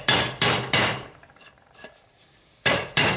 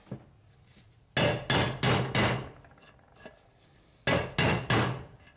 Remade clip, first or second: first